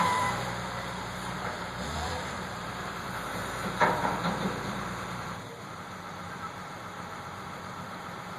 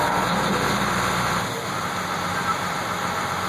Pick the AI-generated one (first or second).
first